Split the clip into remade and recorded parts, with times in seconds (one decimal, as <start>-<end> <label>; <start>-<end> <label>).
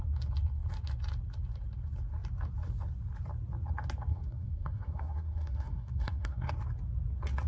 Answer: 0.0-4.1 recorded; 4.1-6.5 remade; 6.5-7.5 recorded